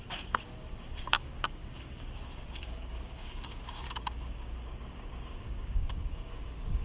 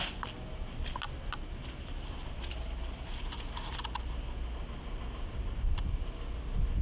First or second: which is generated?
first